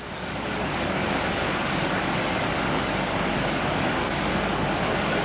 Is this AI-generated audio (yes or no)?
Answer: yes